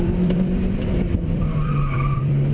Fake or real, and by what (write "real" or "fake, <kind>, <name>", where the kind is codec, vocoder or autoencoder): fake, vocoder, BigVGAN v2